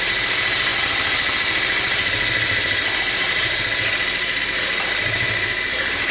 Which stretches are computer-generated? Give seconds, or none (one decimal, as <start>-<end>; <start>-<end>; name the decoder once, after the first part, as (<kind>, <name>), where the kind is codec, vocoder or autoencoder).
none